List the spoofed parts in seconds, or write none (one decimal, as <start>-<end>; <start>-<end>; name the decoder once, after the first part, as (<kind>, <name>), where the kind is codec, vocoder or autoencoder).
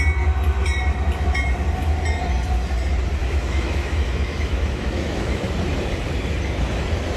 3.2-5.4 (autoencoder, DAC-VAE)